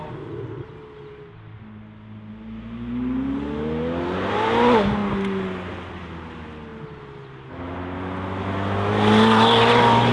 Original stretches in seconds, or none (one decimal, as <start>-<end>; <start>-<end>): 0.0-10.1